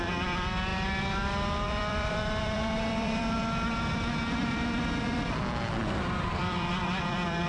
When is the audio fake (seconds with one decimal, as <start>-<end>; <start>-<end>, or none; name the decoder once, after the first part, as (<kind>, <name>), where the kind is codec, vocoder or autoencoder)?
0.0-3.4 (vocoder, BigVGAN v2); 4.4-5.8; 6.4-7.5